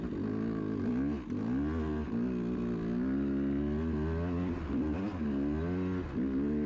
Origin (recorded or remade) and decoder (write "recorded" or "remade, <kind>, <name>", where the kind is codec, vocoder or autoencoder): recorded